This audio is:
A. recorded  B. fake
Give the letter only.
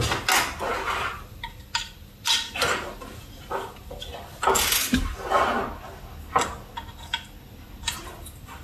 A